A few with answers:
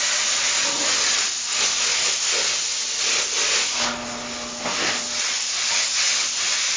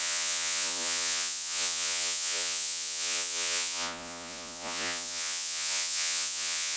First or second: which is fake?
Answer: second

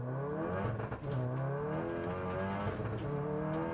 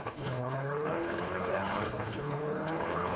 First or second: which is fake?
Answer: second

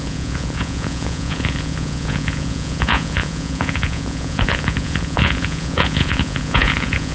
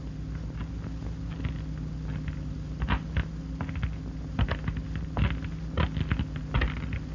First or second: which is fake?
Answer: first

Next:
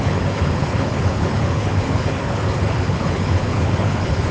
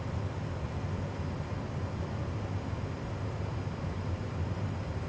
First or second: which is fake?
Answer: first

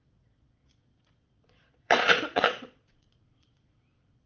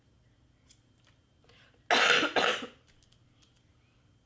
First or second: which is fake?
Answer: first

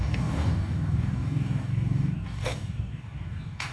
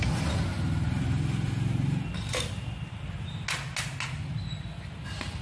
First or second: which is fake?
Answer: first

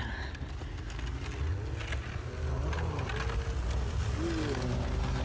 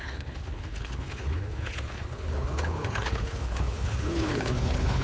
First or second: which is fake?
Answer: second